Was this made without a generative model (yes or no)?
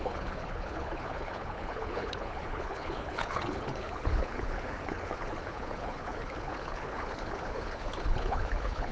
no